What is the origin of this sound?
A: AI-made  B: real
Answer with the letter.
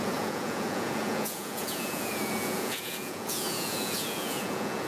A